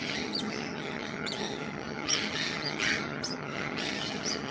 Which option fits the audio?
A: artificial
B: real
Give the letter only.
A